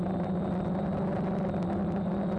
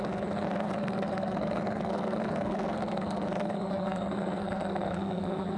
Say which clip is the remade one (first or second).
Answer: second